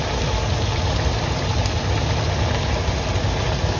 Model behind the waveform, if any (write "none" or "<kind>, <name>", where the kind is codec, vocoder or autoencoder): none